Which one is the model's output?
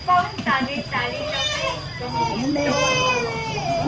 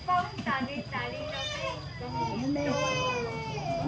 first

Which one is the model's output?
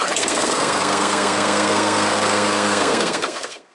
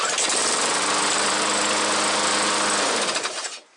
first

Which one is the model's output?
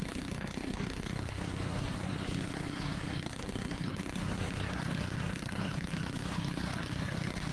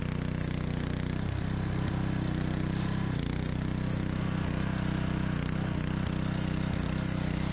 first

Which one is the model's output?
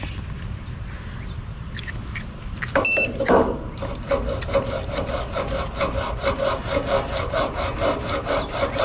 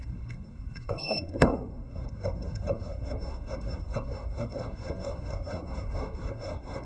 second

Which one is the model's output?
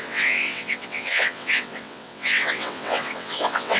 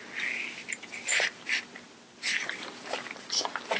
first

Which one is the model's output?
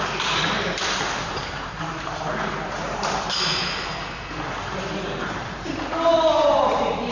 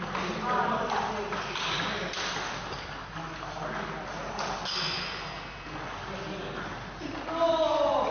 first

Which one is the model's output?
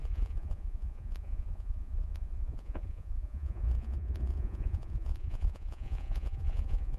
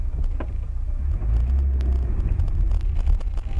first